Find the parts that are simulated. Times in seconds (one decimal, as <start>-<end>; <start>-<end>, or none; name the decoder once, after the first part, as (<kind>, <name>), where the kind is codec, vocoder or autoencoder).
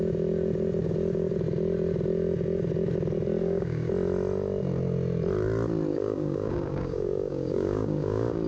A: 3.4-3.9 (codec, DAC); 5.9-8.5